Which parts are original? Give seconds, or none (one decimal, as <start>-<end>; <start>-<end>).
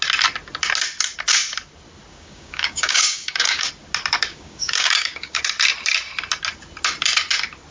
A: 0.0-2.1; 3.7-4.3; 5.4-7.7